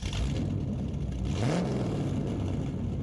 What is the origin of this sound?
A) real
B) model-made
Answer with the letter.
A